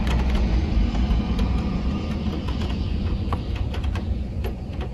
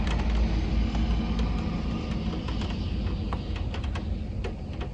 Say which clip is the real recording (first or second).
second